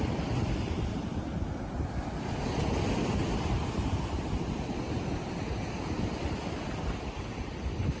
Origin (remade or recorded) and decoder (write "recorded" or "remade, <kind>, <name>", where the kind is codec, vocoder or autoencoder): recorded